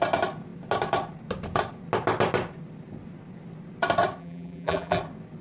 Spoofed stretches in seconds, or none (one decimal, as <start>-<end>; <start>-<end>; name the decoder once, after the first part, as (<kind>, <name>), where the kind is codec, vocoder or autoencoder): 4.2-5.0 (vocoder, BigVGAN v2)